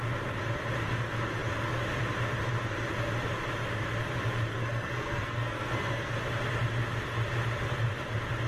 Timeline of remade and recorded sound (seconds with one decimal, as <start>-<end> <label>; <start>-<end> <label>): 0.0-4.5 recorded; 4.5-6.1 remade; 6.1-8.5 recorded